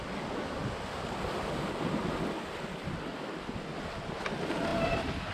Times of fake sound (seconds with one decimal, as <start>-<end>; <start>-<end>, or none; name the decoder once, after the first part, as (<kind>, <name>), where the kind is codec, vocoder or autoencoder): none